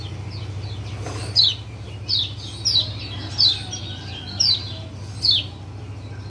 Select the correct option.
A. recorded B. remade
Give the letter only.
A